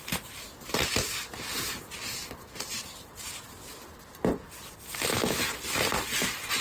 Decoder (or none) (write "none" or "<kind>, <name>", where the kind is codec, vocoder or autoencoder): none